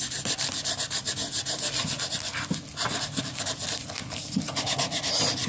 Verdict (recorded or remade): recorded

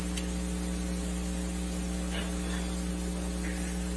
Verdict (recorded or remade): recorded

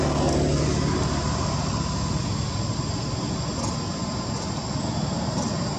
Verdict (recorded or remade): recorded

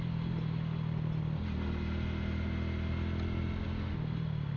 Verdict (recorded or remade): recorded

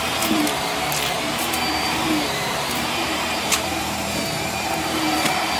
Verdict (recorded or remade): remade